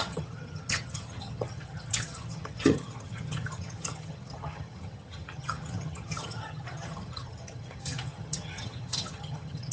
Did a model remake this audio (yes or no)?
yes